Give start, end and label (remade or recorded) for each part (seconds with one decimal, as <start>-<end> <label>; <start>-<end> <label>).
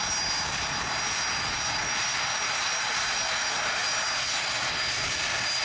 0.0-5.6 recorded